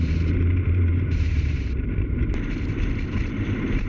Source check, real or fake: fake